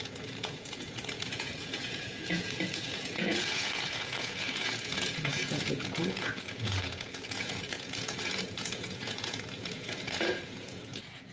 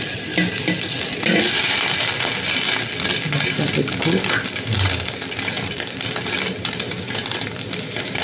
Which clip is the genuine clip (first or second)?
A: second